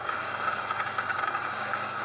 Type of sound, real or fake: fake